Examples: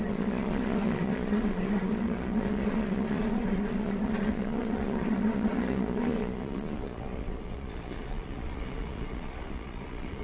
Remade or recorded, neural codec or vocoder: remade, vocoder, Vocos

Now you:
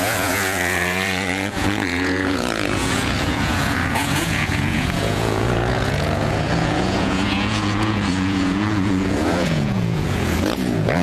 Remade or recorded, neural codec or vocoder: remade, vocoder, Vocos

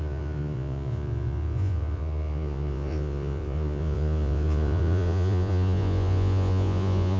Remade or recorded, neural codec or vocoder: remade, vocoder, Vocos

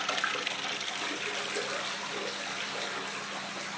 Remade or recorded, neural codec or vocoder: recorded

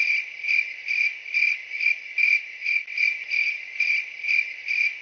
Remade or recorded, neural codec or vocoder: recorded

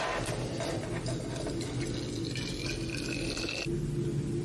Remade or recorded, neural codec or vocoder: recorded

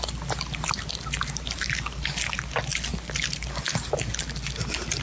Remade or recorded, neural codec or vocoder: recorded